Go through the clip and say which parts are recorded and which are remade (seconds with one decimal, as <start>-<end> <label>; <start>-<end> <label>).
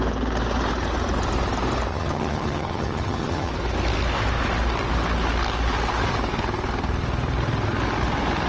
0.0-1.9 recorded; 1.9-3.5 remade; 3.5-8.5 recorded